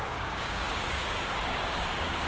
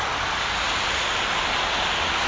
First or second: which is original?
second